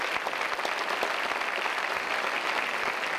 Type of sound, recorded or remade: recorded